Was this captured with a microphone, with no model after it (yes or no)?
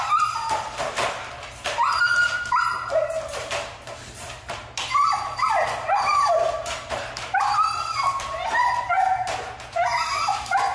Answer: no